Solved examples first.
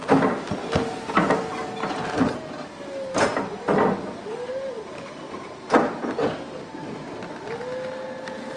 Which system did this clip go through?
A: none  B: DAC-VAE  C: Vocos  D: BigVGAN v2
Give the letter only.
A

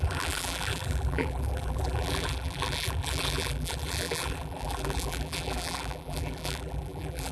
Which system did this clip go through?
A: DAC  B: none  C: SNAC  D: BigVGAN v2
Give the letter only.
D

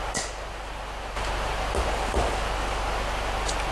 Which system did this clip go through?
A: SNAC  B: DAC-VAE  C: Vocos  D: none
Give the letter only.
D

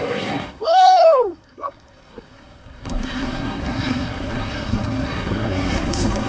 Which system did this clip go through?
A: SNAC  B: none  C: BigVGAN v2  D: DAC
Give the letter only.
A